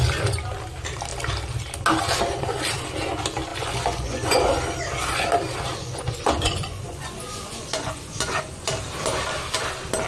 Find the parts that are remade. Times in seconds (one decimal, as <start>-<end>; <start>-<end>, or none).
3.5-4.5; 5.8-8.7